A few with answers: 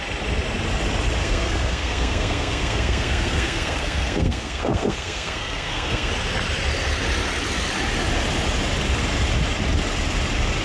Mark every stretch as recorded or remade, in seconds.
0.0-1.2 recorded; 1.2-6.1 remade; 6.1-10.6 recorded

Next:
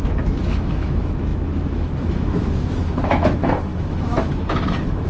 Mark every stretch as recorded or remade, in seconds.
0.0-5.1 remade